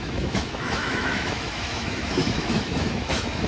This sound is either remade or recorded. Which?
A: remade